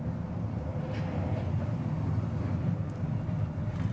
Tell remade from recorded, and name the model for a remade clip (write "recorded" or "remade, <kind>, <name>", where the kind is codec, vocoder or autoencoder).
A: recorded